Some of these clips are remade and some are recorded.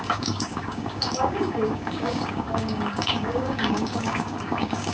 remade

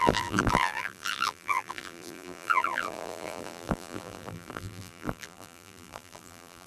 remade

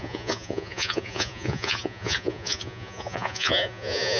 remade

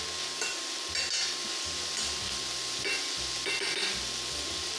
recorded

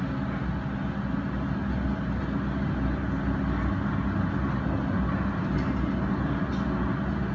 recorded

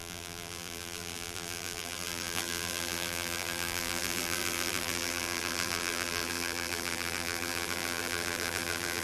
remade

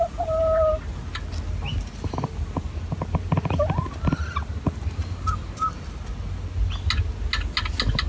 recorded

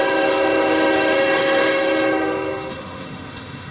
remade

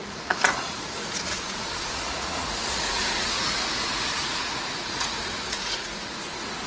remade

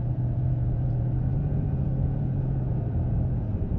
remade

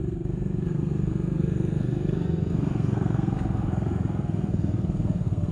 remade